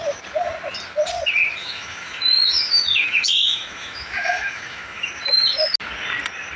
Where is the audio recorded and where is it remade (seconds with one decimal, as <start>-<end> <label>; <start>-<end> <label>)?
0.0-1.6 recorded; 1.6-5.1 remade; 5.1-6.6 recorded

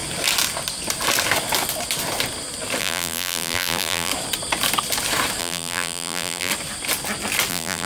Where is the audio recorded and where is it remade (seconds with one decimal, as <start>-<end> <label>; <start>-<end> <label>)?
0.0-2.8 recorded; 2.8-4.1 remade; 4.1-5.4 recorded; 5.4-6.5 remade; 6.5-7.5 recorded; 7.5-7.9 remade